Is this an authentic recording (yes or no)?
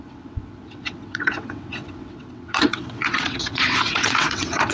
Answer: no